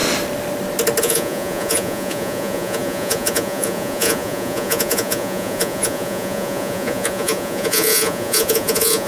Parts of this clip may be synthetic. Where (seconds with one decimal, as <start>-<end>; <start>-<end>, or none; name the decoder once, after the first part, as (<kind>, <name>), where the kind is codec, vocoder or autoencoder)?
1.0-9.1 (vocoder, Vocos)